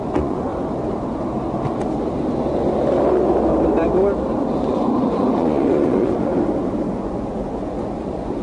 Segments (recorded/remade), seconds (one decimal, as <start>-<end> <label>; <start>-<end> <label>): 0.0-0.5 remade; 0.5-4.6 recorded; 4.6-6.3 remade; 6.3-6.9 recorded; 6.9-8.4 remade